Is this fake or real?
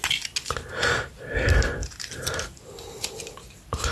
real